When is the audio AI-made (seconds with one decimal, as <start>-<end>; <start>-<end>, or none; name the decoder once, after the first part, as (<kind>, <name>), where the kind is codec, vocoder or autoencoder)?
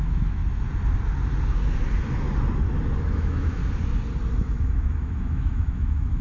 0.0-0.4 (autoencoder, DAC-VAE); 3.0-3.6; 4.3-6.2